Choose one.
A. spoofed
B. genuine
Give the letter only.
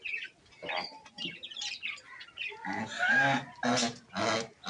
B